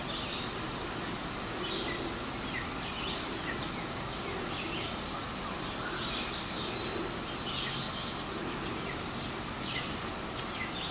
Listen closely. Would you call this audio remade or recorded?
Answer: recorded